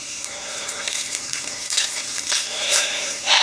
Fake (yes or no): yes